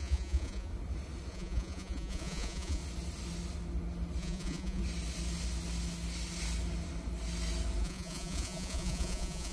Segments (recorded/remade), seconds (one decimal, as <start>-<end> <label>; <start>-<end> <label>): 0.0-0.7 remade; 0.7-1.3 recorded; 1.3-2.8 remade; 2.8-4.2 recorded; 4.2-4.8 remade; 4.8-7.8 recorded; 7.8-9.5 remade